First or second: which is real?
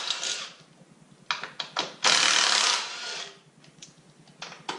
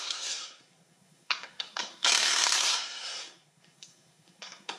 first